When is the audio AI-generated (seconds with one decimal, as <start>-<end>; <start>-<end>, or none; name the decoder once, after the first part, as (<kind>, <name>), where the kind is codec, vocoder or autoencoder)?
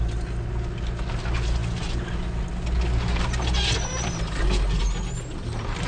none